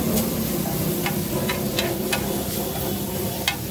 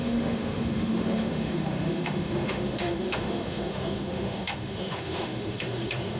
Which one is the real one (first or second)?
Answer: first